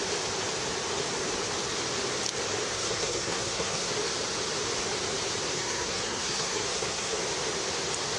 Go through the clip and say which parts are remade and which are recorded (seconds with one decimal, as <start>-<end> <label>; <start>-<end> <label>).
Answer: 0.0-2.7 recorded; 2.7-3.9 remade; 3.9-5.6 recorded; 5.6-7.2 remade; 7.2-8.2 recorded